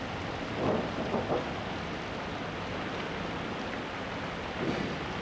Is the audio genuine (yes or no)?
yes